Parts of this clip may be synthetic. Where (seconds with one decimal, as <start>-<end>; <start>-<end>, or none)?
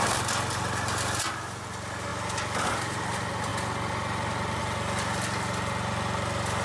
none